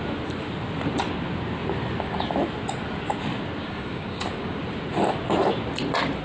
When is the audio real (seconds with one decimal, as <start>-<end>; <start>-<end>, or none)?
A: 0.0-3.6; 4.6-6.2